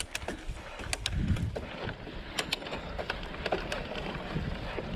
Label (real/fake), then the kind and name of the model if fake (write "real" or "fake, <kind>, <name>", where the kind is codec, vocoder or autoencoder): real